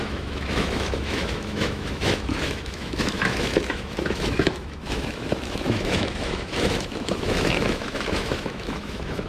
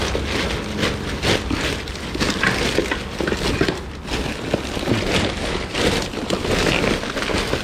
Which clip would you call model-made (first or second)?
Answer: first